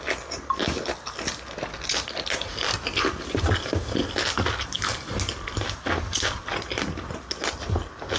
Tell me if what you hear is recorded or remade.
recorded